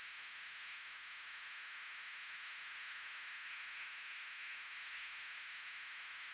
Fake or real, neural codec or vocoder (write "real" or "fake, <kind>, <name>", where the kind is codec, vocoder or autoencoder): fake, autoencoder, DAC-VAE